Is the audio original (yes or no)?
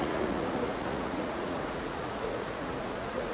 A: no